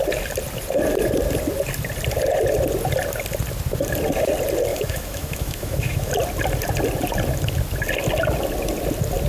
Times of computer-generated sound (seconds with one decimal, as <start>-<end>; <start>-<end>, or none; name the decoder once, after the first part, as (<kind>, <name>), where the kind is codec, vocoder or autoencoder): 4.7-6.1 (autoencoder, DAC-VAE)